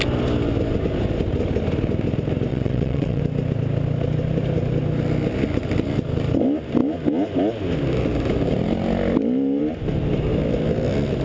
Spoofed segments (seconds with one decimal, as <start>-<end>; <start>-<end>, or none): 2.5-3.2